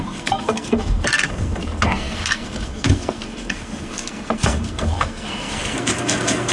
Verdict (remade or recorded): remade